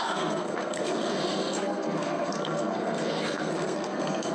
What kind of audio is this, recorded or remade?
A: remade